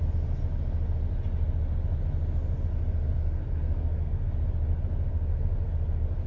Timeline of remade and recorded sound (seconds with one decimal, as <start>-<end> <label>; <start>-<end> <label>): 0.0-3.2 recorded; 3.2-4.3 remade; 4.3-5.1 recorded; 5.1-5.7 remade; 5.7-6.3 recorded

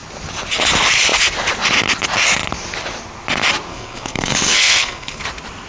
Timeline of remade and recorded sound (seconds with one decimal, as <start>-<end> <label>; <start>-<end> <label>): 0.0-3.7 recorded; 3.7-5.2 remade; 5.2-5.7 recorded

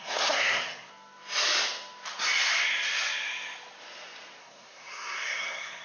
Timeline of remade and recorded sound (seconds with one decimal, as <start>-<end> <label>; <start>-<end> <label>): 0.0-0.9 remade; 0.9-4.4 recorded; 4.4-5.8 remade

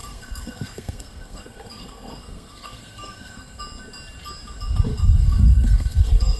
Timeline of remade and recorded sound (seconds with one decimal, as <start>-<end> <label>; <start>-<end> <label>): 0.0-3.6 remade; 3.6-4.9 recorded; 4.9-6.4 remade

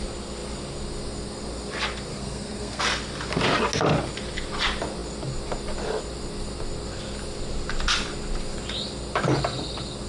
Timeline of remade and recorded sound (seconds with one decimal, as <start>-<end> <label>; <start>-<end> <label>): 0.0-2.1 recorded; 2.1-2.8 remade; 2.8-10.1 recorded